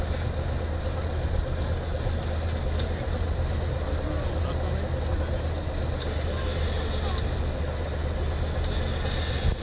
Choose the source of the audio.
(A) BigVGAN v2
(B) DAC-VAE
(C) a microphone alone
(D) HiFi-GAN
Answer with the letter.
C